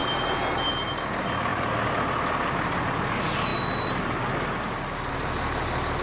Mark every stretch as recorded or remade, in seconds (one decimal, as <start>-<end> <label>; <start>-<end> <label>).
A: 0.0-6.0 recorded